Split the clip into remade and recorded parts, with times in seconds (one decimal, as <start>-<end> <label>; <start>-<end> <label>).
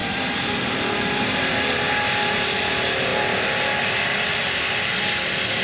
0.0-5.6 recorded